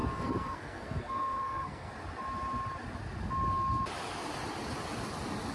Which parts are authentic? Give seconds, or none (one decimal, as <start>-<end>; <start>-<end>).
1.9-5.5